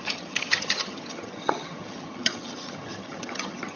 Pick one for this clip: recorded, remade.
remade